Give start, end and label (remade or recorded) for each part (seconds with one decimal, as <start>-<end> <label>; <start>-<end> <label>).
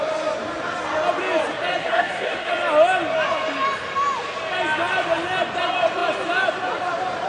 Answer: 0.0-1.8 recorded; 1.8-2.5 remade; 2.5-7.3 recorded